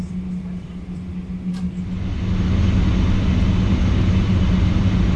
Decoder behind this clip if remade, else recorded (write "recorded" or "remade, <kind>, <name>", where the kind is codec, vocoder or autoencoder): recorded